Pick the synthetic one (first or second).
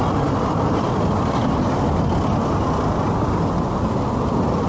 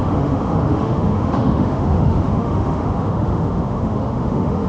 second